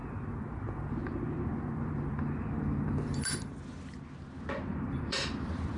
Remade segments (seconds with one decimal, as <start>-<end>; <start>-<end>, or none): 0.0-3.5; 4.7-5.8